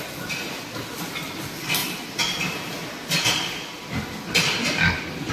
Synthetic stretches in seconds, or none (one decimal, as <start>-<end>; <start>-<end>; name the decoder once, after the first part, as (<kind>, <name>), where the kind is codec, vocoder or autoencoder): none